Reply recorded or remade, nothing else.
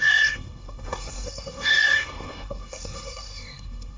remade